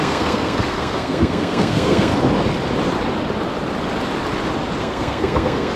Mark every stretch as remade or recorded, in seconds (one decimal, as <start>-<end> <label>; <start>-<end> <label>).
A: 0.0-2.1 remade; 2.1-4.8 recorded; 4.8-5.8 remade